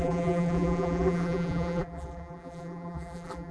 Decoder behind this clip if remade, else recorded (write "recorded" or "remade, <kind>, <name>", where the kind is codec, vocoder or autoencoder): remade, vocoder, BigVGAN v2